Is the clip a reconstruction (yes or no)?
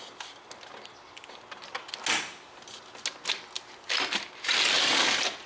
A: no